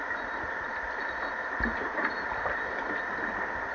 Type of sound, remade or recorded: recorded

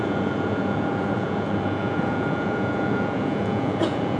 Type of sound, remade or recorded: remade